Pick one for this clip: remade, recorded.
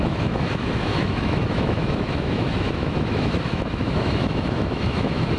remade